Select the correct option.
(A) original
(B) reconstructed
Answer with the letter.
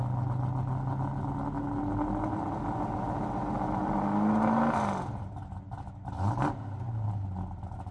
A